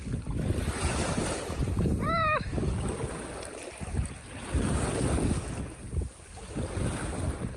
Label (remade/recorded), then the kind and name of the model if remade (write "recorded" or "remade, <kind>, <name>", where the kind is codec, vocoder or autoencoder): recorded